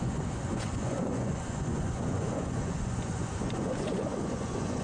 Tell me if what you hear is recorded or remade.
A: remade